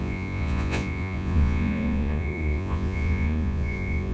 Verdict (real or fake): fake